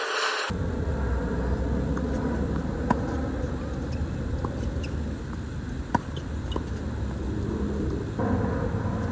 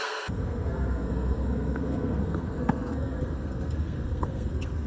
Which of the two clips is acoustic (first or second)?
first